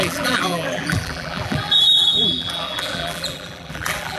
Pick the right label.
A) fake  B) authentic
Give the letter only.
A